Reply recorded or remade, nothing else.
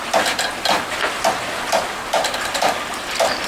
recorded